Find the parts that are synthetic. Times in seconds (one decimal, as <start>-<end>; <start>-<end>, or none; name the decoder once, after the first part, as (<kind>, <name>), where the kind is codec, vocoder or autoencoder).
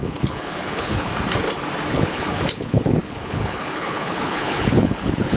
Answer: 0.0-1.1 (codec, HILCodec); 1.9-5.4